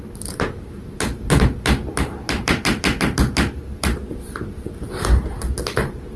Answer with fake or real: fake